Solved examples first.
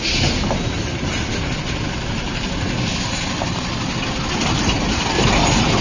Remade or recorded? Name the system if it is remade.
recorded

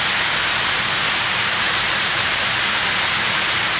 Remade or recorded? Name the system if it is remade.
recorded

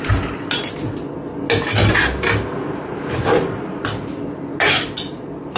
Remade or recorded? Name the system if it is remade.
recorded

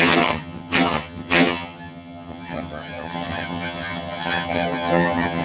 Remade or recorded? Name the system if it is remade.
remade, vocoder, HiFi-GAN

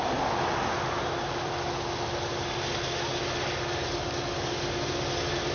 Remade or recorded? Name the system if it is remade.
recorded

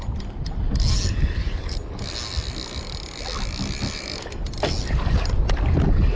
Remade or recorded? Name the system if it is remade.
recorded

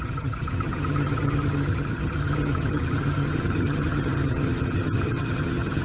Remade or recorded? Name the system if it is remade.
remade, vocoder, HiFi-GAN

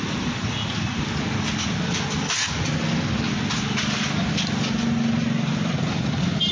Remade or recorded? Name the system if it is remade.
recorded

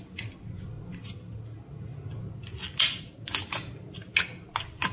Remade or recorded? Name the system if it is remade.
recorded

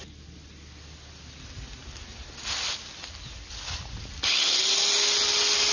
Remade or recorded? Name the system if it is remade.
recorded